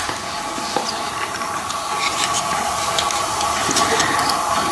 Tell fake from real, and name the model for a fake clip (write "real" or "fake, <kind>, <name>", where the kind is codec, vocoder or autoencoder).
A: real